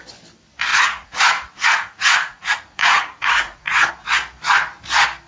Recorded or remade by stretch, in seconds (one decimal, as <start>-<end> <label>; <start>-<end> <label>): 0.0-0.7 recorded; 0.7-3.9 remade; 3.9-5.3 recorded